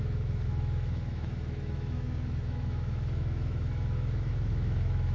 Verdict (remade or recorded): remade